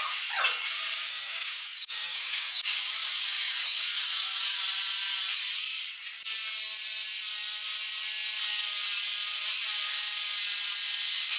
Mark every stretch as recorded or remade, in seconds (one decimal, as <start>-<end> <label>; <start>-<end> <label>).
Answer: 0.0-1.1 recorded; 1.1-4.6 remade; 4.6-11.4 recorded